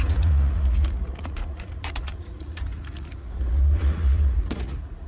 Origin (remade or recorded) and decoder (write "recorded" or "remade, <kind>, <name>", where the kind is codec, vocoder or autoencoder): remade, vocoder, Vocos